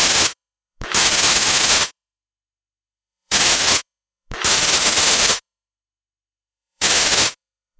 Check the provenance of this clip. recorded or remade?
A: remade